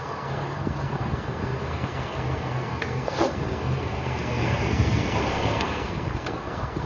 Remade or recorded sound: remade